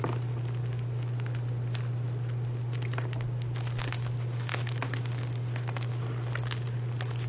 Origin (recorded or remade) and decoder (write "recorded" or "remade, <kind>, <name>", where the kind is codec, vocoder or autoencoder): recorded